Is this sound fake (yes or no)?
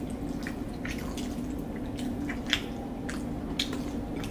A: no